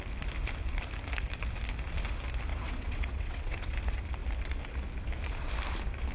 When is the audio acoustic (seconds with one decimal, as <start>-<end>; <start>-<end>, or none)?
0.0-2.5; 3.7-6.1